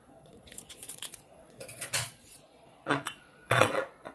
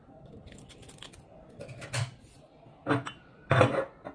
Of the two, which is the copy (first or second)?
first